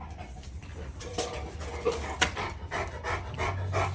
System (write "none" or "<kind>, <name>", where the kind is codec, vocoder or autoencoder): none